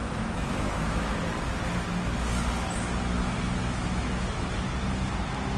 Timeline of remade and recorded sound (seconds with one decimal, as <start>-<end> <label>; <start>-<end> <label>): 0.0-1.1 remade; 1.1-3.6 recorded; 3.6-4.4 remade; 4.4-5.6 recorded